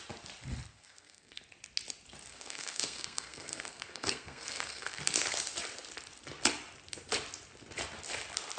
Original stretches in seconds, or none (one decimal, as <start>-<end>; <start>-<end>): 0.0-0.7; 1.4-2.3; 5.0-8.6